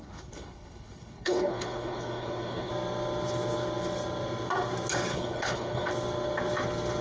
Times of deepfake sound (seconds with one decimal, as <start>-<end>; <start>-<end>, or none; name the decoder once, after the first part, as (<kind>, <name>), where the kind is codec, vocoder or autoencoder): 0.0-2.7 (codec, HILCodec); 5.1-5.9